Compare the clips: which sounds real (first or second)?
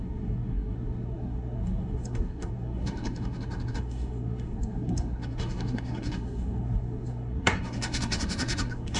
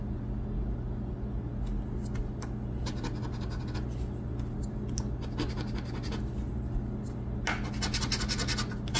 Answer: second